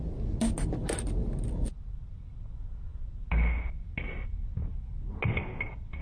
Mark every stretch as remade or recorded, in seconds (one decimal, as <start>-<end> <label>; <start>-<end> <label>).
0.0-6.0 recorded